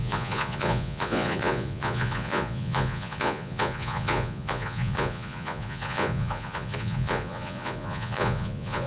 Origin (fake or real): fake